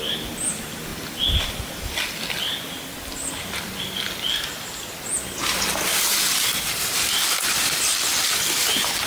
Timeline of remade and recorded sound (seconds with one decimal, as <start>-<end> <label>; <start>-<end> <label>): 0.0-9.1 recorded